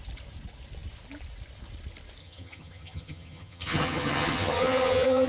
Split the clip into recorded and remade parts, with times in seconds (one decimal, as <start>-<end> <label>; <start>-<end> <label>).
0.0-2.2 recorded; 2.2-5.3 remade